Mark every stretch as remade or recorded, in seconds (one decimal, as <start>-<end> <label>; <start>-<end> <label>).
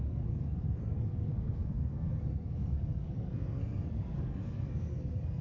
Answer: 0.0-5.4 remade